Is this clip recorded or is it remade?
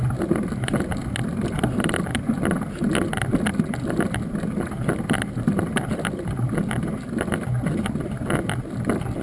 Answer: recorded